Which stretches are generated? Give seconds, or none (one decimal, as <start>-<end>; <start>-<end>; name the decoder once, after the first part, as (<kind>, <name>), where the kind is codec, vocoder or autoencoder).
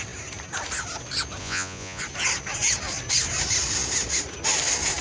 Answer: 1.4-2.0 (vocoder, Vocos)